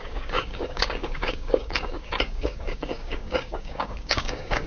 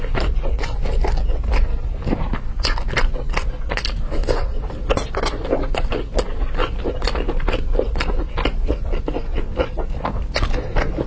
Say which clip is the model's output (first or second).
first